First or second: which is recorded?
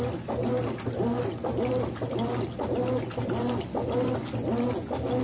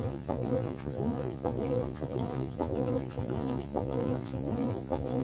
first